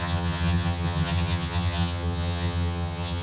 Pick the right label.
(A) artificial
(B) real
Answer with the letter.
A